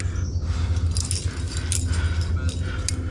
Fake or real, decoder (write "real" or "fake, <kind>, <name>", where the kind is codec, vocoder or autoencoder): real